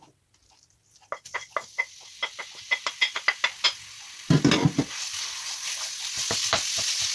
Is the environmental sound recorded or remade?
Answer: recorded